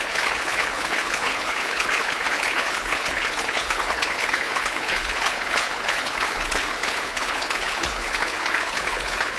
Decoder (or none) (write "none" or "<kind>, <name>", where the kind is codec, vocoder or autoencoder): codec, HILCodec